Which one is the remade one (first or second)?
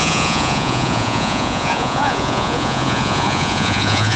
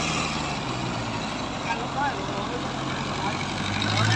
first